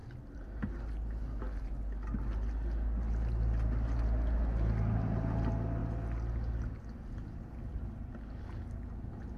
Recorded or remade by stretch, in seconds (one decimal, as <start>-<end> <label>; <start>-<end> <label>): 0.0-9.4 recorded

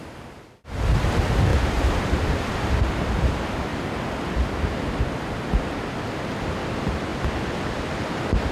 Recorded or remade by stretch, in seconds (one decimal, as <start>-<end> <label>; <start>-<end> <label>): 0.0-7.1 remade; 7.1-8.1 recorded; 8.1-8.5 remade

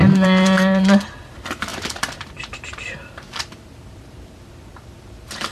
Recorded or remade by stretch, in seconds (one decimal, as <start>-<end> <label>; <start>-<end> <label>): 0.0-5.5 remade